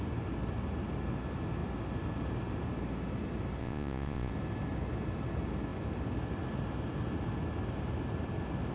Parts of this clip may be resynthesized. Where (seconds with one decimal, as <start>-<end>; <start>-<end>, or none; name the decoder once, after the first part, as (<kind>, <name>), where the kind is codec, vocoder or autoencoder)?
3.6-4.3 (vocoder, Vocos)